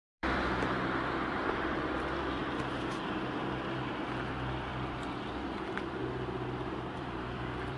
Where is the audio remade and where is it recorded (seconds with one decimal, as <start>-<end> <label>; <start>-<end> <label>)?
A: 0.0-4.7 remade; 4.7-5.2 recorded; 5.2-6.0 remade; 6.0-6.9 recorded; 6.9-7.8 remade